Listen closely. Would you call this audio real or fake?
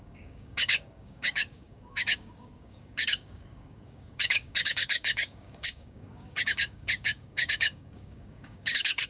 fake